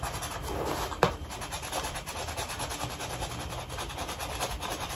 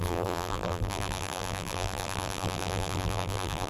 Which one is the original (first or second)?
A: first